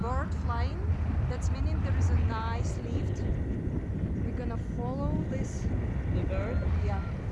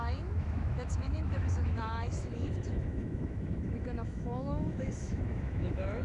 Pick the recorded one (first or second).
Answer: first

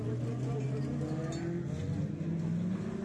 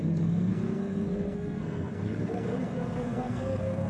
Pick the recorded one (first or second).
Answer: first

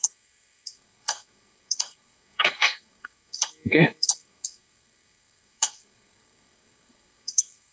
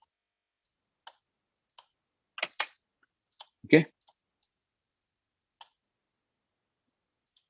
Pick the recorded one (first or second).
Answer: second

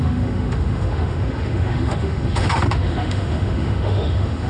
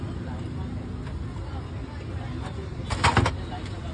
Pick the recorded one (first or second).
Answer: second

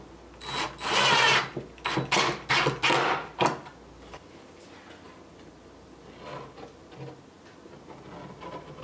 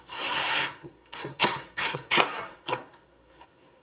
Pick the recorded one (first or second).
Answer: first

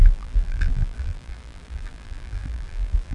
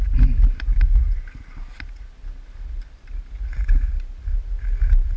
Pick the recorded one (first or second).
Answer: second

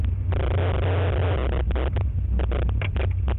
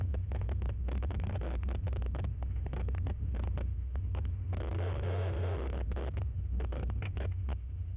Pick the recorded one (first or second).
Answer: first